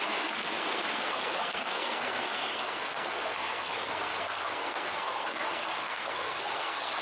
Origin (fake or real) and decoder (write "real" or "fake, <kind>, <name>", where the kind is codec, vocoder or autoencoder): fake, codec, SNAC